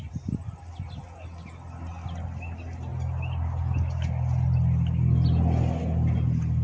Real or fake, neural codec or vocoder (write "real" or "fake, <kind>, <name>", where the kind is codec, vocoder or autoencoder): real